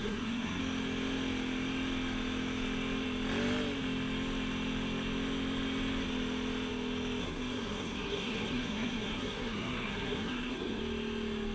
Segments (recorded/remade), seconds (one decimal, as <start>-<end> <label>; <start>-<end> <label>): 0.0-0.6 remade; 0.6-7.2 recorded; 7.2-10.8 remade; 10.8-11.5 recorded